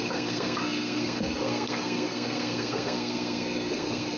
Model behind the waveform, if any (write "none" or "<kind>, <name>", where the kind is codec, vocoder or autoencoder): codec, SNAC